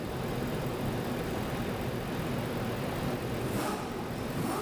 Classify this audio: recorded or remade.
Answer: remade